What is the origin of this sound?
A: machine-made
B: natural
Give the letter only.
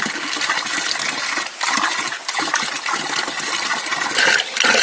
B